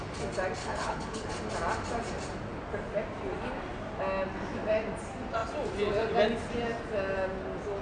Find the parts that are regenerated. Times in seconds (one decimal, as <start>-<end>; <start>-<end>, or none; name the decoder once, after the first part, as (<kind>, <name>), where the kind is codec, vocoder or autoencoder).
0.6-1.3 (codec, HILCodec)